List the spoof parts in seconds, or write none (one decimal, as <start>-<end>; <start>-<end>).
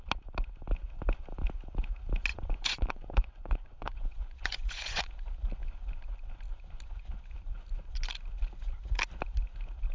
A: 2.3-5.1